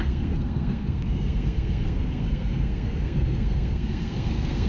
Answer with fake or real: fake